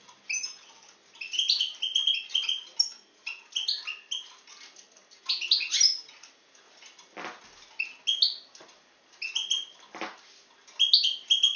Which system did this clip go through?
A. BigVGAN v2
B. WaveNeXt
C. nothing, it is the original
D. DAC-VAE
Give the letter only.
C